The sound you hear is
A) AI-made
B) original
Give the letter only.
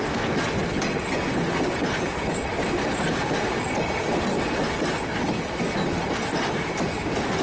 B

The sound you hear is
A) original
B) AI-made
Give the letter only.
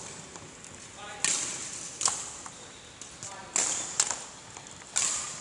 A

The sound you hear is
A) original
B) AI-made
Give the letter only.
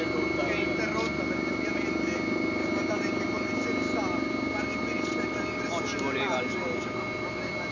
A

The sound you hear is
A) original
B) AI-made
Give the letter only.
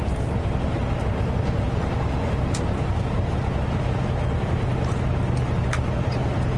A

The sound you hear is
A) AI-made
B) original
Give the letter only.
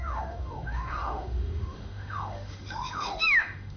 A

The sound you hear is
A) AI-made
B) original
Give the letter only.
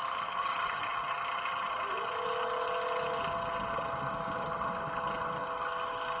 B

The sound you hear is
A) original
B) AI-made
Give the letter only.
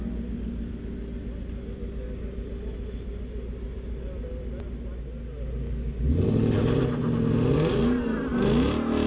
A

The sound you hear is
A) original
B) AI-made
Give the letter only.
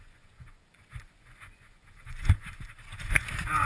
B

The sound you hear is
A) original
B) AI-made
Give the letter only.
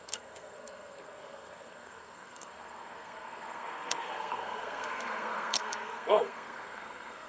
B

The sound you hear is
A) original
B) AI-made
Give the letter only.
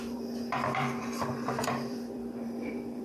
B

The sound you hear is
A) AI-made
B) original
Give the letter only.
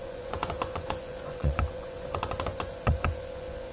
A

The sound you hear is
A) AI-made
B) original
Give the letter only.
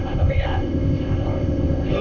A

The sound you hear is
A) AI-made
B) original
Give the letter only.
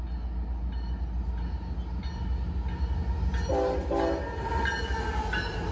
B